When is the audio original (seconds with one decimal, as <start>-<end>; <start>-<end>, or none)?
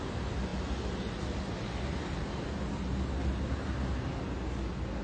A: 0.0-5.0